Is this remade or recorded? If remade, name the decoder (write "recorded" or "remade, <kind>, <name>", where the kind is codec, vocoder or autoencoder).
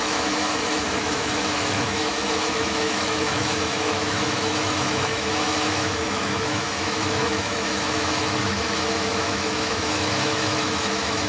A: remade, autoencoder, DAC-VAE